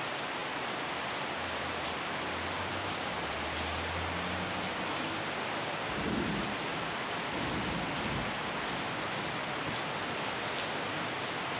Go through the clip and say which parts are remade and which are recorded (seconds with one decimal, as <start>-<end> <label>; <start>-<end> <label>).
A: 0.0-11.6 recorded